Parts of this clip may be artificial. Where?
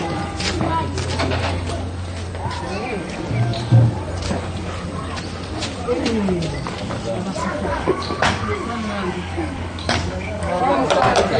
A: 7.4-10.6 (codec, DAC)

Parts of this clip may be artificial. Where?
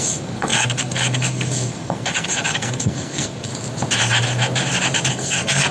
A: 0.0-3.5 (codec, SNAC); 5.1-5.7